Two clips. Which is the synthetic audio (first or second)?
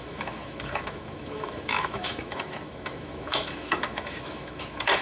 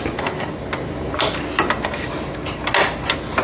first